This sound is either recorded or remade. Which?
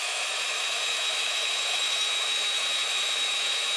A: remade